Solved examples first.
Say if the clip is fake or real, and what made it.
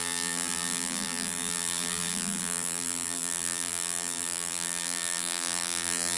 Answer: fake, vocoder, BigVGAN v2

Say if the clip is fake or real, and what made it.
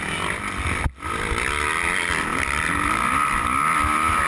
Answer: real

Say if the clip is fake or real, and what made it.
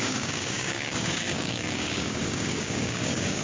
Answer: fake, codec, DAC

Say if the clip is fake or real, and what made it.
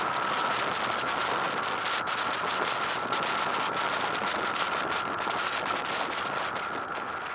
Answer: real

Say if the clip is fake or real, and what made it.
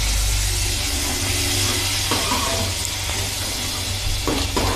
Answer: real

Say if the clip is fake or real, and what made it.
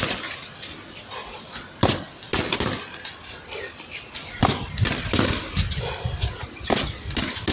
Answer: real